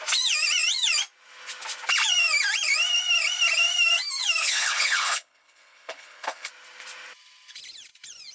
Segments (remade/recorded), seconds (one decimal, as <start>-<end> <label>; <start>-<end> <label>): 0.0-4.4 recorded; 4.4-6.5 remade; 6.5-8.3 recorded